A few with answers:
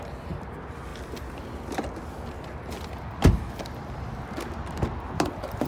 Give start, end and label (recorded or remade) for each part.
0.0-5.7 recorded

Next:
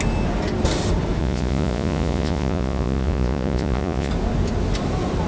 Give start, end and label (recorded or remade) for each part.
0.0-1.2 recorded; 1.2-4.1 remade; 4.1-5.3 recorded